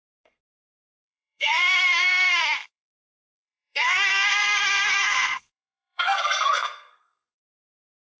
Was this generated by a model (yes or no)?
yes